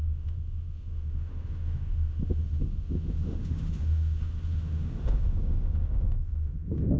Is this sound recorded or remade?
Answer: remade